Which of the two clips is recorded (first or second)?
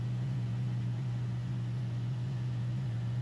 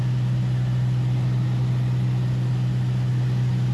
second